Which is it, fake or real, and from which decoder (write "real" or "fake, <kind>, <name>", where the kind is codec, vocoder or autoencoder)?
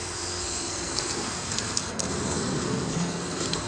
fake, codec, SNAC